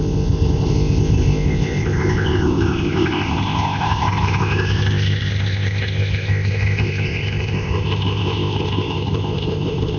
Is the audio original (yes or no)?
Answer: no